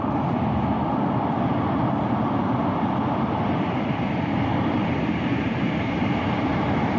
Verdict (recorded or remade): remade